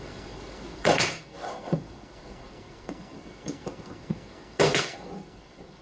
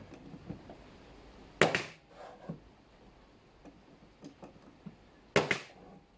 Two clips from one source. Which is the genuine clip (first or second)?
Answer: second